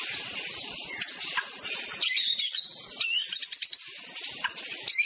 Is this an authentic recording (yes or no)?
yes